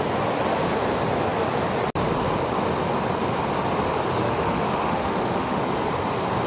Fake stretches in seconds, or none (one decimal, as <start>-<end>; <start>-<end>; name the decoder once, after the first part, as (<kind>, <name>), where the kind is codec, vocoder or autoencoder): 4.2-5.6 (autoencoder, DAC-VAE)